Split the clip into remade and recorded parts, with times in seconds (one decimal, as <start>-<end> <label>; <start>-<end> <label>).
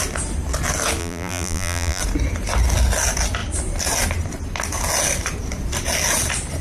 0.0-1.0 recorded; 1.0-2.0 remade; 2.0-6.6 recorded